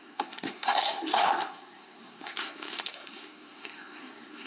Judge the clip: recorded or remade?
remade